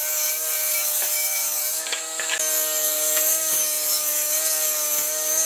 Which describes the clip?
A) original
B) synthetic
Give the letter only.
B